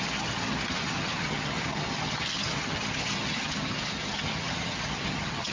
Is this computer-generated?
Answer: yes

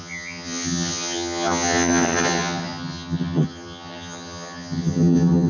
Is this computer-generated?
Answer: yes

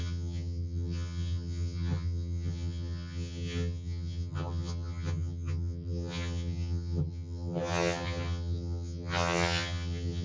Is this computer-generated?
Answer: yes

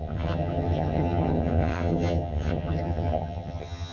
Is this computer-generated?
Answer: yes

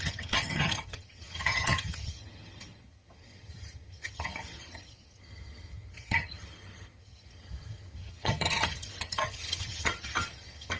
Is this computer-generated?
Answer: yes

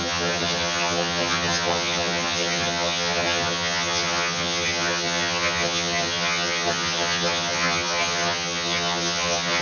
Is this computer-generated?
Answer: yes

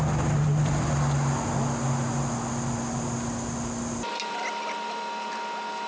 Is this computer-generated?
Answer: no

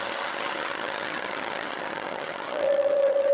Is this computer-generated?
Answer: yes